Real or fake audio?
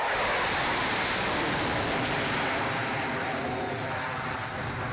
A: real